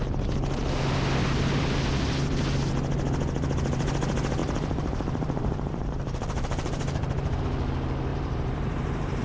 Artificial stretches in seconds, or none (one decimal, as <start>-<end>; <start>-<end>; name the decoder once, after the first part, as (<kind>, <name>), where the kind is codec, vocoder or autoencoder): 4.4-7.4 (vocoder, BigVGAN v2); 8.1-9.2